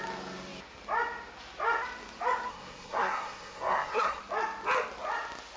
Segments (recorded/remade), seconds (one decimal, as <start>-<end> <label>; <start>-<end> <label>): 0.0-2.5 recorded; 2.5-4.2 remade; 4.2-5.6 recorded